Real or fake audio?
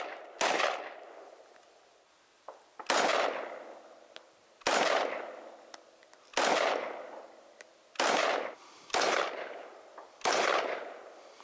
real